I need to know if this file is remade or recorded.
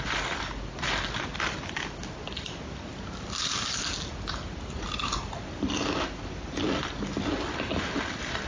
recorded